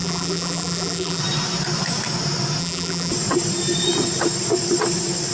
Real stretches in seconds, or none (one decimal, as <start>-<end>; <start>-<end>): 1.2-2.6; 3.1-5.3

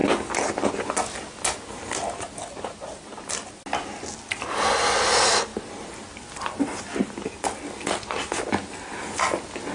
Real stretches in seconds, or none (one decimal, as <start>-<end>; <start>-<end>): 0.0-9.7

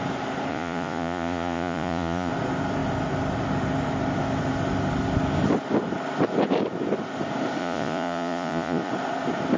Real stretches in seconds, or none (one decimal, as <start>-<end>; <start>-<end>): 0.0-0.5; 2.3-7.6; 8.9-9.6

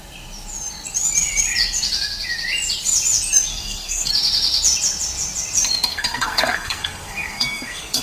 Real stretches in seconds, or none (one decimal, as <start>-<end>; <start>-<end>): 0.0-3.5; 4.1-5.9